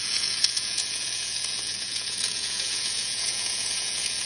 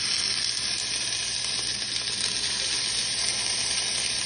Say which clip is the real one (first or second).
second